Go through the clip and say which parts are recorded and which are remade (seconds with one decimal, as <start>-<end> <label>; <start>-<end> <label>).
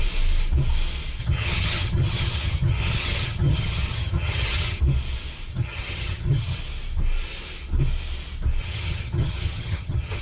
0.0-1.2 recorded; 1.2-4.8 remade; 4.8-5.5 recorded; 5.5-6.6 remade; 6.6-8.6 recorded; 8.6-10.2 remade